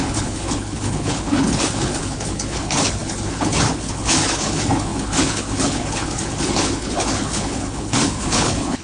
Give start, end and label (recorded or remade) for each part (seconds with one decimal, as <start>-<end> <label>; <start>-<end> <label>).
0.0-8.8 remade